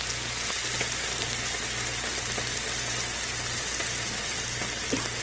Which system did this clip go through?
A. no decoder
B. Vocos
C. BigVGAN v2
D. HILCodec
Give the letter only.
A